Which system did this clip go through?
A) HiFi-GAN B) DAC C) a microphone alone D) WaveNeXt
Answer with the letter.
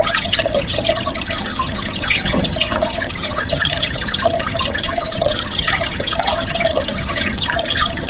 A